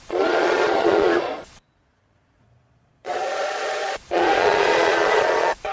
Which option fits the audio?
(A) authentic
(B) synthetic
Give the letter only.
B